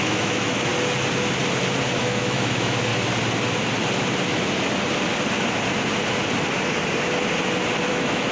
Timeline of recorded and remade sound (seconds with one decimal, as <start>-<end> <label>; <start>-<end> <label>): 0.0-0.7 remade; 0.7-2.0 recorded; 2.0-2.9 remade; 2.9-7.9 recorded; 7.9-8.3 remade